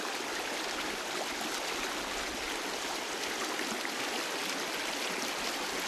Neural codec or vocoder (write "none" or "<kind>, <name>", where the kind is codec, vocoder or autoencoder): none